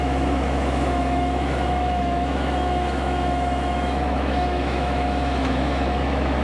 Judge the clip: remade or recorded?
remade